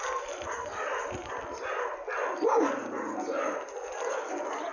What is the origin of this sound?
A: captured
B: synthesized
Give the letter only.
A